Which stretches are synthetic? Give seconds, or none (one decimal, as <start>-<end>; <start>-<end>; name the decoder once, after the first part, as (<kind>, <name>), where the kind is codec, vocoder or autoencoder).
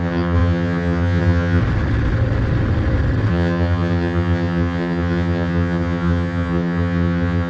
0.0-1.6 (vocoder, HiFi-GAN); 3.3-7.5